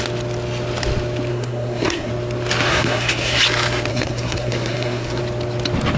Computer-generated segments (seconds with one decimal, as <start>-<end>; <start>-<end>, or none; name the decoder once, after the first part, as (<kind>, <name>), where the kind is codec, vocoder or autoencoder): 1.3-2.1 (codec, SNAC); 2.7-3.4; 3.9-5.2